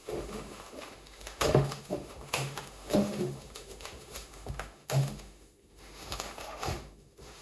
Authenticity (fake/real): fake